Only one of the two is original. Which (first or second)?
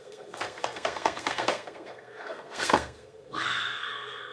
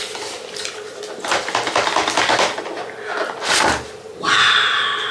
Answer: second